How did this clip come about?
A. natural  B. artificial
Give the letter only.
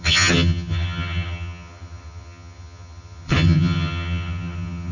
B